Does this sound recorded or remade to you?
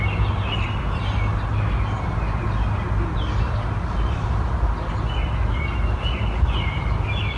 recorded